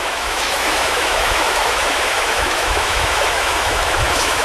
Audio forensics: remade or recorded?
remade